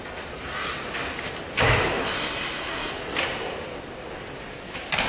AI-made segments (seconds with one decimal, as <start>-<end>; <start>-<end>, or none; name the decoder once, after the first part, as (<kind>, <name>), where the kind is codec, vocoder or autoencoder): 2.0-2.9 (codec, SNAC)